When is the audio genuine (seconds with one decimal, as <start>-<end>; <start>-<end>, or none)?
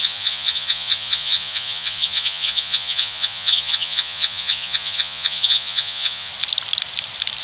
6.3-7.4